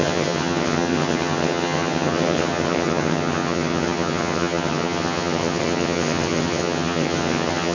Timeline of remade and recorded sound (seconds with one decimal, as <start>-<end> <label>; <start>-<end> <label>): 0.0-7.7 remade